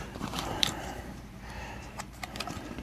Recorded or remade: remade